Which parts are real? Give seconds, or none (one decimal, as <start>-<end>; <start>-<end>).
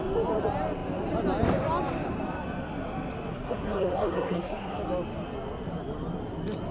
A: 0.0-3.3; 4.8-6.7